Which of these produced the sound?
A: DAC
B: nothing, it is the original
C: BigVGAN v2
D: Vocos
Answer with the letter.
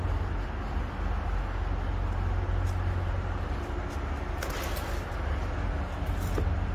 B